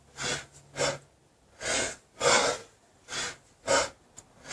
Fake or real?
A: real